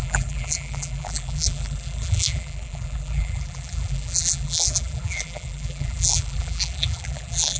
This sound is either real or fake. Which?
fake